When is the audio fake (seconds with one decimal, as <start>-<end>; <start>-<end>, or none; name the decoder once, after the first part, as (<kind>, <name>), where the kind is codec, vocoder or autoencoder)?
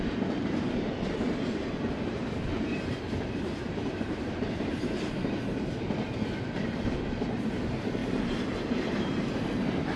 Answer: 0.0-0.9 (vocoder, BigVGAN v2); 1.9-8.0; 8.9-10.0